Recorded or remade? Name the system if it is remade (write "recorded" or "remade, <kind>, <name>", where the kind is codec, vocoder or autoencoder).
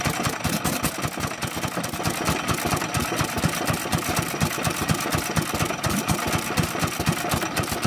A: recorded